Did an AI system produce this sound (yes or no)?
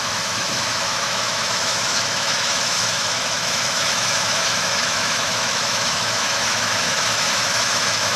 yes